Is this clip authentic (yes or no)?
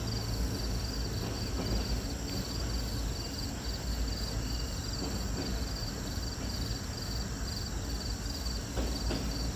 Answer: yes